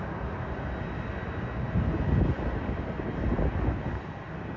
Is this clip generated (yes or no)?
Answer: no